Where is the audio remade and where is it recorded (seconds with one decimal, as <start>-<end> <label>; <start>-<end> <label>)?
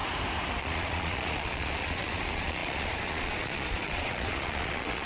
0.0-0.6 recorded; 0.6-5.1 remade